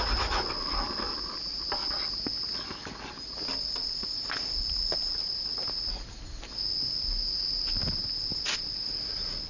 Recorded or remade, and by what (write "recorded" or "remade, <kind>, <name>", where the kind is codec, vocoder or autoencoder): recorded